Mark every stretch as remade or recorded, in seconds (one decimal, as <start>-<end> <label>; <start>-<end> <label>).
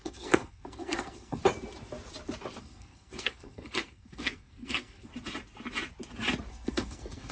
0.0-1.4 remade; 1.4-2.6 recorded; 2.6-5.1 remade; 5.1-6.5 recorded; 6.5-7.3 remade